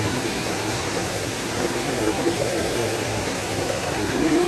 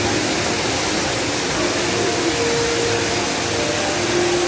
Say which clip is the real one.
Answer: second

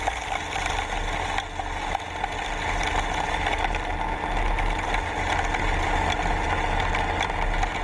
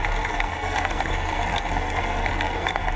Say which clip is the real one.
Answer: first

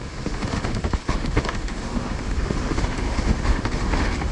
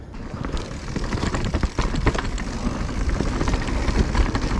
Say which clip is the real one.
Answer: second